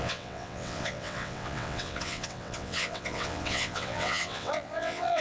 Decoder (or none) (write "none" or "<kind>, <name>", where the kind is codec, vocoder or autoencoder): vocoder, WaveNeXt